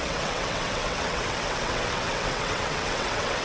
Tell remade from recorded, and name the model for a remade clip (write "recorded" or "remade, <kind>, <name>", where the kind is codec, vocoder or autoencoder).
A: remade, vocoder, WaveNeXt